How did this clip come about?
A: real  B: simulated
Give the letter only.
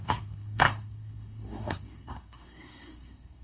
B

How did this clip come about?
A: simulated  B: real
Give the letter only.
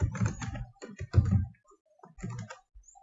B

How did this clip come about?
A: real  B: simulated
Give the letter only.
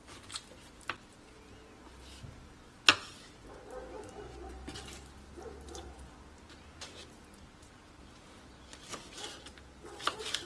A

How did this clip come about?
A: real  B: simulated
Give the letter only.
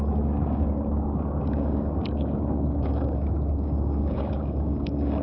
B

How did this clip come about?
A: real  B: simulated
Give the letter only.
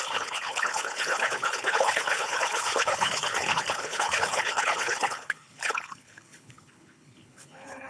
B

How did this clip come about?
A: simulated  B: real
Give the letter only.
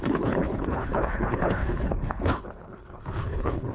A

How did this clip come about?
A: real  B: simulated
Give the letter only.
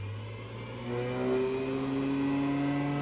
A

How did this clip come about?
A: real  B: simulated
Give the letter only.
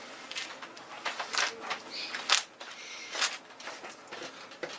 A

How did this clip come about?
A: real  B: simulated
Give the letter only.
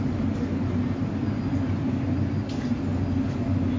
A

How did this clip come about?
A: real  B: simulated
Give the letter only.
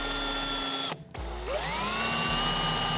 A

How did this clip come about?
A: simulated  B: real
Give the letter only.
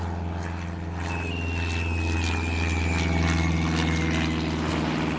B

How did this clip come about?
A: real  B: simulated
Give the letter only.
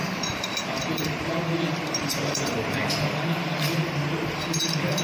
B